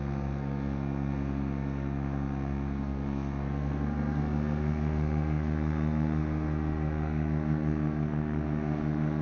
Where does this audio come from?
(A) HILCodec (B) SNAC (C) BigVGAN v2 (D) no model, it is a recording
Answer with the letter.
B